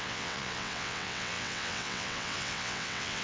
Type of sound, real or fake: fake